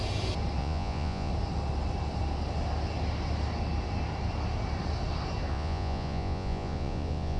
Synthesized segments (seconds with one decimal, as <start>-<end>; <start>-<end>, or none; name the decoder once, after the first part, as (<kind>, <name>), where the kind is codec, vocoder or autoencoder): 0.6-1.3 (vocoder, Vocos); 5.5-7.4